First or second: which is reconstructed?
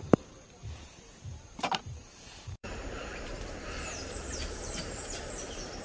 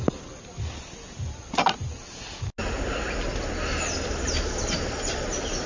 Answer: first